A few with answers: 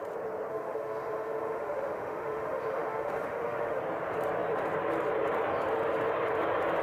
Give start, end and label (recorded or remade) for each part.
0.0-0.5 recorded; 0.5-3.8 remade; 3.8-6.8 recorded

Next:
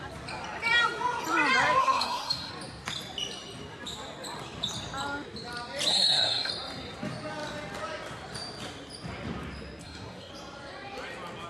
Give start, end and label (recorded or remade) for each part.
0.0-1.8 recorded; 1.8-2.5 remade; 2.5-5.9 recorded; 5.9-6.5 remade; 6.5-9.8 recorded; 9.8-10.3 remade; 10.3-11.5 recorded

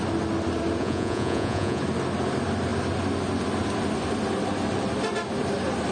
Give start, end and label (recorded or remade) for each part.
0.0-0.8 recorded; 0.8-1.8 remade; 1.8-5.9 recorded

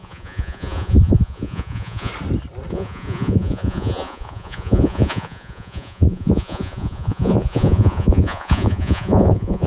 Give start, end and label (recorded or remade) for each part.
0.0-2.1 remade; 2.1-2.7 recorded; 2.7-9.7 remade

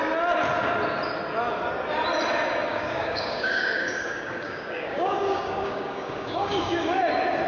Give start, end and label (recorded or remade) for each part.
0.0-2.7 recorded; 2.7-7.1 remade; 7.1-7.5 recorded